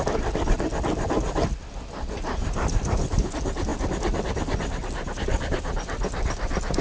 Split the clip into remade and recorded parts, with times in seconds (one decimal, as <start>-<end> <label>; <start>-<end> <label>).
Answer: 0.0-6.8 recorded